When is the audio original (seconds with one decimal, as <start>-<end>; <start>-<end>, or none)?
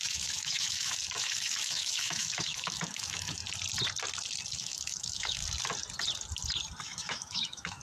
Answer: 3.4-4.5; 5.4-6.8